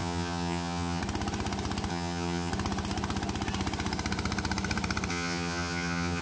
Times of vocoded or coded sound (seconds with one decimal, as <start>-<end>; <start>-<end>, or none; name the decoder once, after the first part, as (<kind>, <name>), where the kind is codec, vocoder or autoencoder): 0.0-1.0 (vocoder, HiFi-GAN); 1.9-2.5; 5.1-6.2